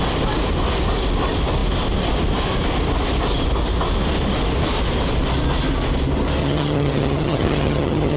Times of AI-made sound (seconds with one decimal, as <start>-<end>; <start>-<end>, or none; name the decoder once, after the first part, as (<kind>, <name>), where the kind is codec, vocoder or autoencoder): 6.4-8.2 (vocoder, HiFi-GAN)